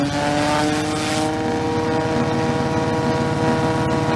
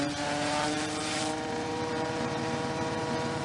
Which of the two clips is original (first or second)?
first